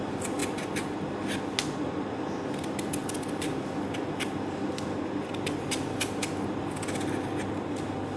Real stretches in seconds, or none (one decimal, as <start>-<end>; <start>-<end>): 0.0-8.2